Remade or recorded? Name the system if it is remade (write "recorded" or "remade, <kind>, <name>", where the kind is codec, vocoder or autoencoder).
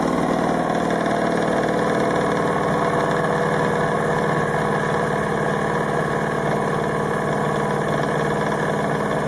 recorded